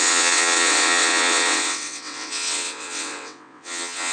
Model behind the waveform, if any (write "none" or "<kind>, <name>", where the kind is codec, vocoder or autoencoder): vocoder, WaveNeXt